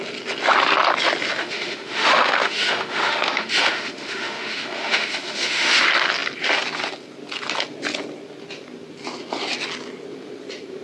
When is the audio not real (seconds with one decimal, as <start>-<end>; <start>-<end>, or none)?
1.4-5.8